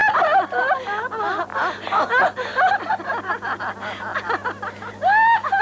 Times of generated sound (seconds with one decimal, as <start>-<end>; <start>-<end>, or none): none